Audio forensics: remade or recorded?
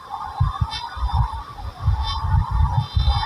recorded